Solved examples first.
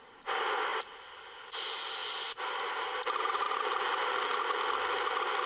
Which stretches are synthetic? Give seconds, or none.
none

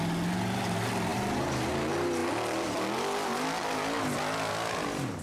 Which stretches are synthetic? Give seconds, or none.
none

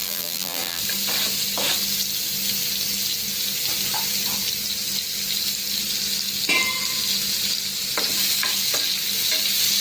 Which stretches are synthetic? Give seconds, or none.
0.0-0.8 (vocoder, BigVGAN v2)

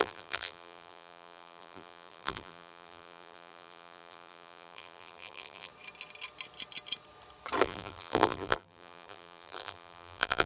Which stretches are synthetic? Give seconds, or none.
0.0-5.7 (vocoder, BigVGAN v2); 7.6-10.5

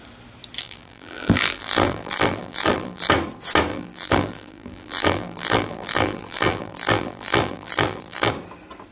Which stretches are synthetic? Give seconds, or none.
0.6-3.1 (vocoder, BigVGAN v2); 3.7-8.3

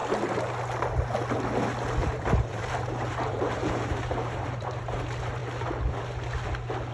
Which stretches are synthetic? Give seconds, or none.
2.0-5.0 (vocoder, BigVGAN v2)